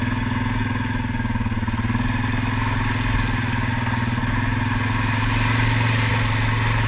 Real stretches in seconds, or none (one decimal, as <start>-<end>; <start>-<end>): 0.0-6.9